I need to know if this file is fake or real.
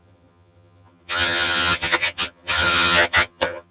fake